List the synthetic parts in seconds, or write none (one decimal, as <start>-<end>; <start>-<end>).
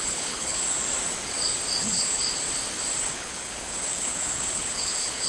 0.0-0.8; 1.8-2.2; 3.1-5.3